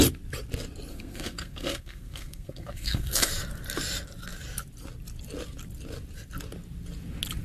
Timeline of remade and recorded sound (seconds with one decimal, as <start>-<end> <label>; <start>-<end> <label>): 0.0-0.9 recorded; 0.9-3.3 remade; 3.3-7.4 recorded